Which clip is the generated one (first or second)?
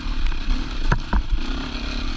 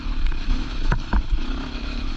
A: second